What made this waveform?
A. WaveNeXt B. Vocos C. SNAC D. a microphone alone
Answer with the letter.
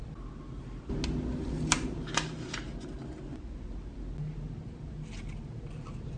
D